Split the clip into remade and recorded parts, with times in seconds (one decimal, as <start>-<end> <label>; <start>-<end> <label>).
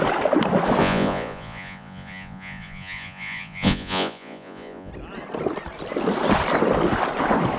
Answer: 0.0-0.8 recorded; 0.8-4.9 remade; 4.9-7.6 recorded